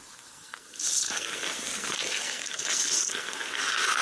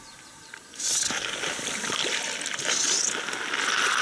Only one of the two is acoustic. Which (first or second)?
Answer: second